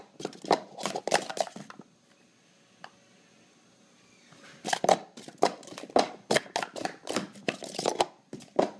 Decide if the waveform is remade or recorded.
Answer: recorded